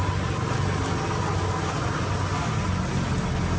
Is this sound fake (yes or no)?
no